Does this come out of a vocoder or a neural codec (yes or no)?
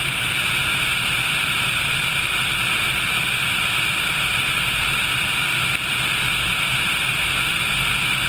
no